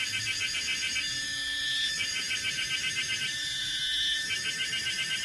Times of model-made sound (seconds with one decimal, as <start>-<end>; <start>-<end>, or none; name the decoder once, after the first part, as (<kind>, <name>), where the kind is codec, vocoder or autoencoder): 0.0-5.2 (autoencoder, DAC-VAE)